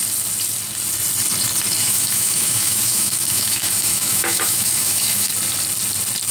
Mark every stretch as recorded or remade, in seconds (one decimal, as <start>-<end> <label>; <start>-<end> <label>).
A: 0.0-1.8 recorded; 1.8-5.3 remade; 5.3-6.3 recorded